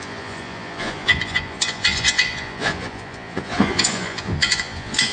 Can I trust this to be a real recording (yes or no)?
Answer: no